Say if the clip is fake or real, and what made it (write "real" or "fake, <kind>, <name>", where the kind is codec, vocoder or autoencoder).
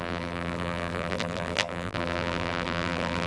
fake, vocoder, BigVGAN v2